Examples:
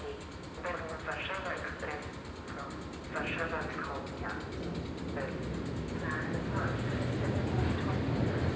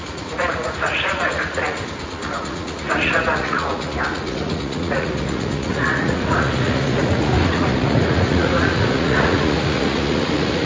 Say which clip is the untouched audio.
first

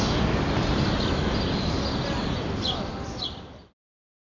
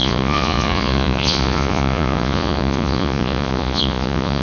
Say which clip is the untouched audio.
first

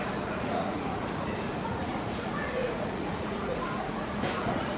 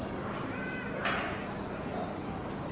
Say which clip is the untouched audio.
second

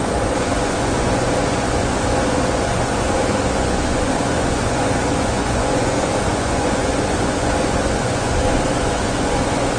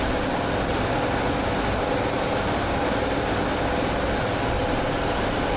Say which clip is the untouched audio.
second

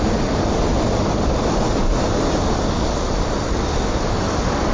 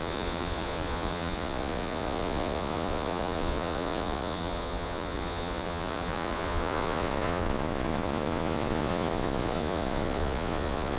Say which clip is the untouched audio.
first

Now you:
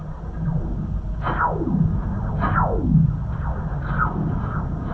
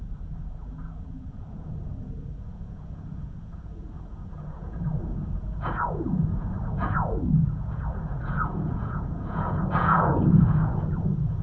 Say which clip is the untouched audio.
first